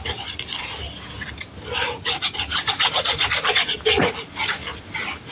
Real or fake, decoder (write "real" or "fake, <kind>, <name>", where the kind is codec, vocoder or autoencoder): real